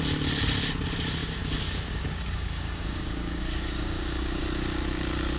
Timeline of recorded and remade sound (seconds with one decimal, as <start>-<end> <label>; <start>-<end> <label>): 0.0-1.2 recorded; 1.2-4.4 remade; 4.4-5.4 recorded